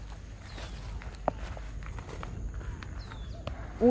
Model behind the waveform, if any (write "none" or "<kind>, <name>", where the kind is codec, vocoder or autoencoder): none